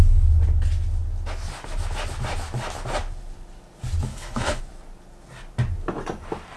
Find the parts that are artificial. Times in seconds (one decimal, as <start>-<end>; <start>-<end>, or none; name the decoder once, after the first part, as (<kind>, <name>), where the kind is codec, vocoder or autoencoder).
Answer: 4.1-4.6 (codec, HILCodec)